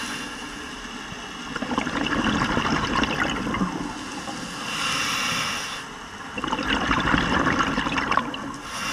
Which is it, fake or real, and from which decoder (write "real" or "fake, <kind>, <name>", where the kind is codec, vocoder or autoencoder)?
real